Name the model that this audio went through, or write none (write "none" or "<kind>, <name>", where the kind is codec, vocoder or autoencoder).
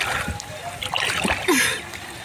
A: none